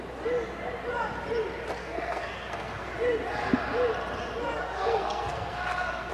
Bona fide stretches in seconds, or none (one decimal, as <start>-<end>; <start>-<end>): 0.0-1.8; 2.9-4.6